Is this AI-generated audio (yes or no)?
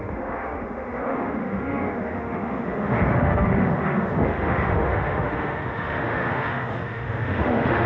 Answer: yes